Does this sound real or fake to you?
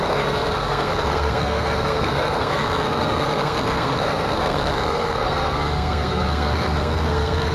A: fake